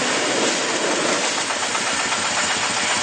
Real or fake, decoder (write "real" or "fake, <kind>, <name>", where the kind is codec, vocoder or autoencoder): real